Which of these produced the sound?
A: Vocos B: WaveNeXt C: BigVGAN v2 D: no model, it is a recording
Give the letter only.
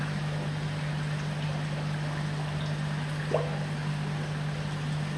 D